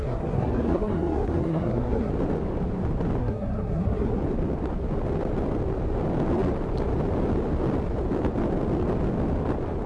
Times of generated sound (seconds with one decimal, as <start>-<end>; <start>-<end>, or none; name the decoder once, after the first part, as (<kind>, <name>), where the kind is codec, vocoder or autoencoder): 0.0-2.1 (codec, SNAC); 3.2-4.2